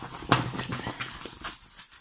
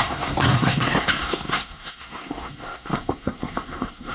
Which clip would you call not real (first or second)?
second